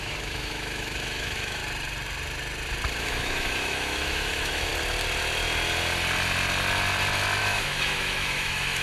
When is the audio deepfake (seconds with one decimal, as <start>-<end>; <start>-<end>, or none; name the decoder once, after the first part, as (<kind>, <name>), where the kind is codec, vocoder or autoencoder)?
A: 0.0-1.6 (autoencoder, DAC-VAE); 3.0-4.7; 7.4-8.8